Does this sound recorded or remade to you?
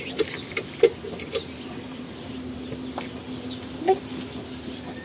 recorded